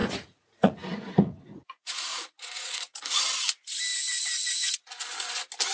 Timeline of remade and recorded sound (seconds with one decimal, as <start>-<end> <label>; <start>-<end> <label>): 0.0-3.2 remade; 3.2-5.7 recorded